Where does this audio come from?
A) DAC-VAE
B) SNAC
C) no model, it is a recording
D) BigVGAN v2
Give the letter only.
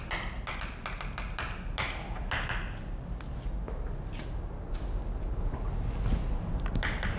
C